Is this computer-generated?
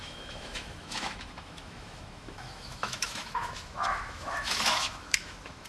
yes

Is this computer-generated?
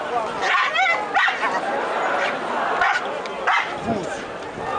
no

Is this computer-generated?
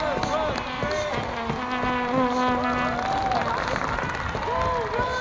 no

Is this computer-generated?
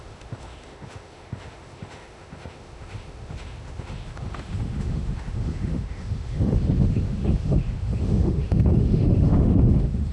yes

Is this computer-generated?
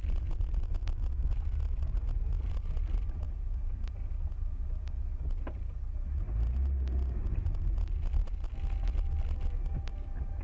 no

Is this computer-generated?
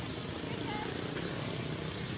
no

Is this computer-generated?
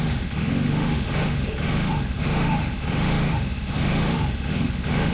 yes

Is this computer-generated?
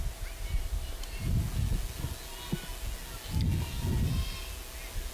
no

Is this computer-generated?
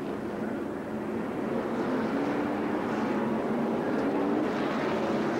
no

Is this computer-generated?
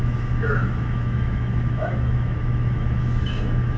yes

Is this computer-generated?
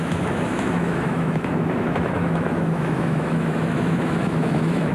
yes